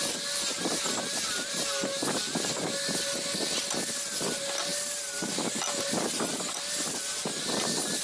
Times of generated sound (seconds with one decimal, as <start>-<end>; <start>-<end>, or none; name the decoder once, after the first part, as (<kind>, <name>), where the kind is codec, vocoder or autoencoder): none